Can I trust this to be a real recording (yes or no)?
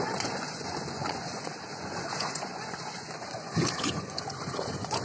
no